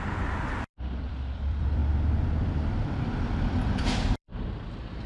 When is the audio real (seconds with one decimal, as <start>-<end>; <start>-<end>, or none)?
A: 1.8-2.5; 4.3-5.1